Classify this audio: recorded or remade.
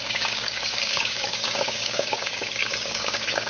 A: remade